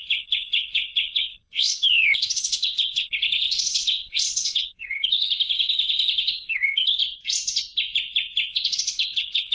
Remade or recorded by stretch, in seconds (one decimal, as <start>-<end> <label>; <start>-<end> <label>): 0.0-7.0 remade; 7.0-8.5 recorded; 8.5-9.5 remade